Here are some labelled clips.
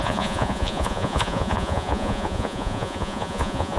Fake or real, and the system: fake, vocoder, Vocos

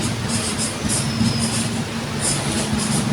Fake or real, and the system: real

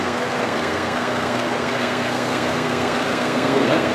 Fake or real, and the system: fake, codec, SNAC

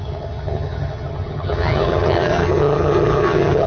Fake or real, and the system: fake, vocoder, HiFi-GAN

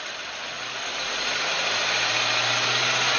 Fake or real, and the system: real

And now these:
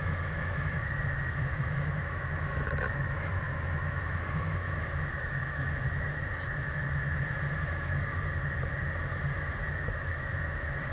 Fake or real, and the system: fake, autoencoder, DAC-VAE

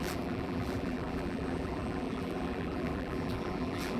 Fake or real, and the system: fake, vocoder, BigVGAN v2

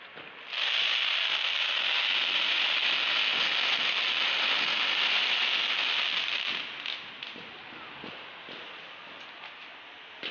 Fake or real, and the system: real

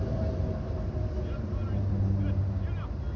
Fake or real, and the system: real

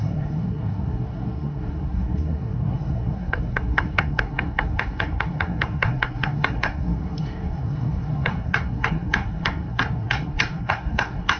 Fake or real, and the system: fake, codec, SNAC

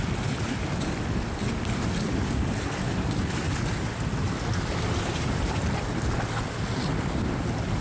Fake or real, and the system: real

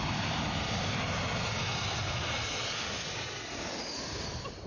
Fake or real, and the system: real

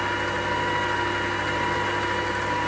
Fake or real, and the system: real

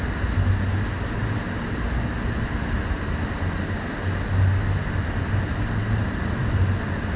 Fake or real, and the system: real